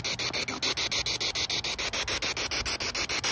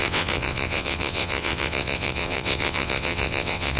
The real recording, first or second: first